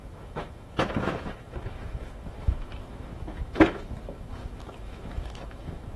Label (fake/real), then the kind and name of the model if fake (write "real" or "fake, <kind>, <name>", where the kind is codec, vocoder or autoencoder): fake, autoencoder, DAC-VAE